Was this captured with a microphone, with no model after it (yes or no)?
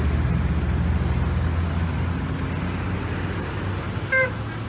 yes